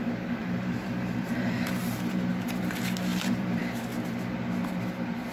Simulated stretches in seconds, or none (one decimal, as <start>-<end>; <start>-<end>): 0.4-2.3; 3.1-3.6